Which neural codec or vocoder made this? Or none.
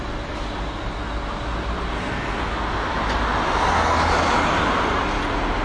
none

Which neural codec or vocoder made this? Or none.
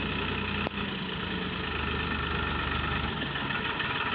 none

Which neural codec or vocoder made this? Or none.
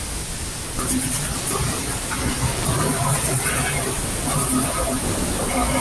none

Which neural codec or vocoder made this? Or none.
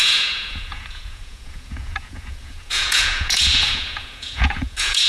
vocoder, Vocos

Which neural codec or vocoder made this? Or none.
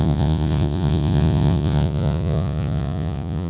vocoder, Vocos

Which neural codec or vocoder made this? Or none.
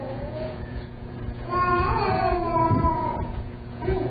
vocoder, Vocos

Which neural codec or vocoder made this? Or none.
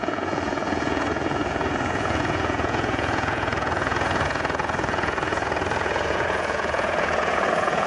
vocoder, Vocos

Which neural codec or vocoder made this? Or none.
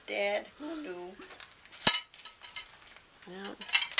none